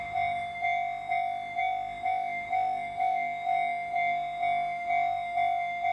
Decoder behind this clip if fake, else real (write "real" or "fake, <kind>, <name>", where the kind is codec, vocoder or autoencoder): fake, autoencoder, DAC-VAE